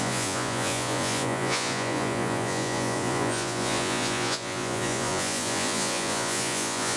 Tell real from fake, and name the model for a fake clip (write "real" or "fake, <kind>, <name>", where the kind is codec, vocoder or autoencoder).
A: fake, vocoder, Vocos